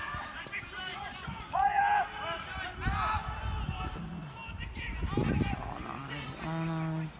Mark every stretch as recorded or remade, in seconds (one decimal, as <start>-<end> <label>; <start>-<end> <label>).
0.0-0.9 recorded; 0.9-1.8 remade; 1.8-7.2 recorded